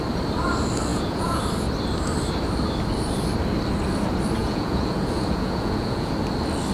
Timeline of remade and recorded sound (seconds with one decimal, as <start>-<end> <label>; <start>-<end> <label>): 0.0-0.9 recorded; 0.9-1.4 remade; 1.4-4.4 recorded; 4.4-6.1 remade; 6.1-6.7 recorded